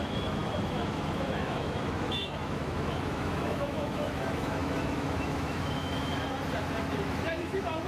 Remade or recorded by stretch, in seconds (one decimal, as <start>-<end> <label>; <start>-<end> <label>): 0.0-6.1 remade; 6.1-7.0 recorded; 7.0-7.9 remade